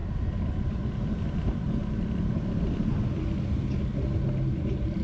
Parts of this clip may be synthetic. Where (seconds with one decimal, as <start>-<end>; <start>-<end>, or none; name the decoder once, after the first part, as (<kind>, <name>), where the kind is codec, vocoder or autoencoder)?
none